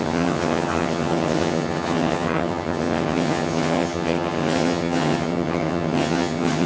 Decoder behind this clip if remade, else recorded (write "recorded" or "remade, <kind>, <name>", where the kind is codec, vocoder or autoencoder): remade, vocoder, HiFi-GAN